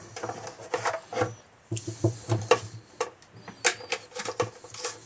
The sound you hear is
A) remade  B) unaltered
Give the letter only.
B